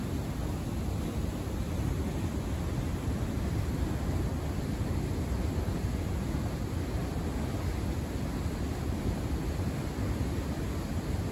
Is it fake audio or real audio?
real